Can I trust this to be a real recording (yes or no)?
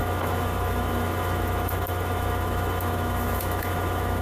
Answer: no